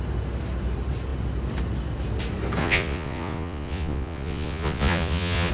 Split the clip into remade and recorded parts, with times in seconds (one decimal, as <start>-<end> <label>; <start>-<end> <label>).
0.0-2.6 recorded; 2.6-5.5 remade